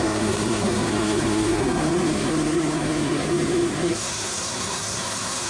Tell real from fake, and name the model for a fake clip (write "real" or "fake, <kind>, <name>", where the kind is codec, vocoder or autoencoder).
fake, codec, SNAC